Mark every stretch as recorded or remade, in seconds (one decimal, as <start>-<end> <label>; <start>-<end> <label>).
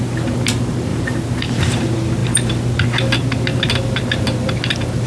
0.0-0.9 recorded; 0.9-1.8 remade; 1.8-5.1 recorded